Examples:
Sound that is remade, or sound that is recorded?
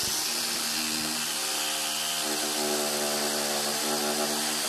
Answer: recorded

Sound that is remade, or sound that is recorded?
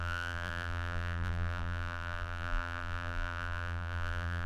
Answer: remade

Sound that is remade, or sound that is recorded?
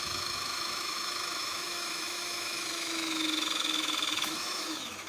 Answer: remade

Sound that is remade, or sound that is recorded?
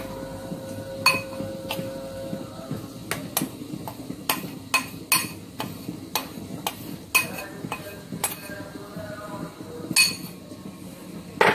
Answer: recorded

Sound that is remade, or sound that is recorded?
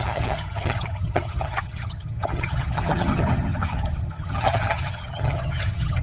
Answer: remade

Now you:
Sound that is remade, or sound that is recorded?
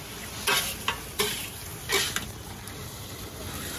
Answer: recorded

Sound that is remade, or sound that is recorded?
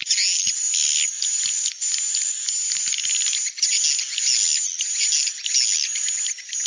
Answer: recorded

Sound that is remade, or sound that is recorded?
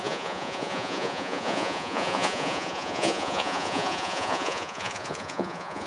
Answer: remade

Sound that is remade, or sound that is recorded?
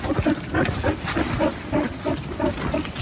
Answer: recorded